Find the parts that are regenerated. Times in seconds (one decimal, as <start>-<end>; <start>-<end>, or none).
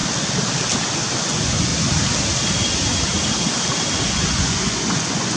1.2-1.7; 4.1-5.4